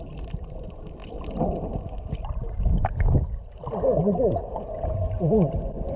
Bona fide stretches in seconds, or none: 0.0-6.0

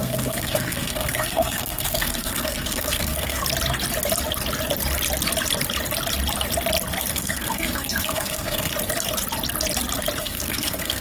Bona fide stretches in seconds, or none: 3.4-7.1; 8.7-10.2

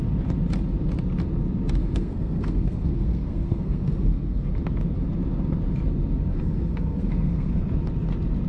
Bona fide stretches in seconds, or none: 0.0-1.8; 4.5-6.3; 7.6-8.5

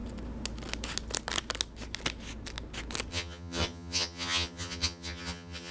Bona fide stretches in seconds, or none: 0.0-3.1

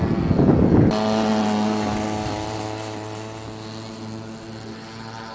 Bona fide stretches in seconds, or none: 0.0-5.3

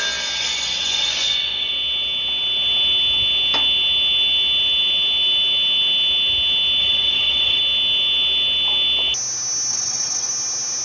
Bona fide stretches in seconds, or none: 0.0-0.4; 1.7-6.8; 7.6-9.7; 10.3-10.8

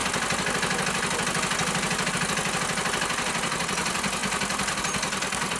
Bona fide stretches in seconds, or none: 0.0-5.6

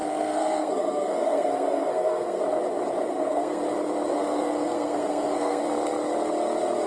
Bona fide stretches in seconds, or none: 2.4-3.1; 3.6-4.1; 5.6-6.9